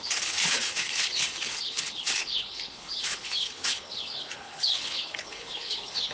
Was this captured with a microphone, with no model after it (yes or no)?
no